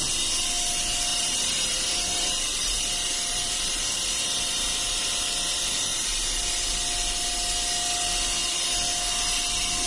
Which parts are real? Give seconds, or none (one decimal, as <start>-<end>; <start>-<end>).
0.0-1.1; 6.4-9.9